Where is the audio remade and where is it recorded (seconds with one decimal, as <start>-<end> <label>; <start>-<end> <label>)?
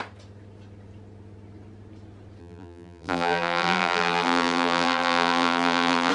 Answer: 0.0-2.4 recorded; 2.4-6.1 remade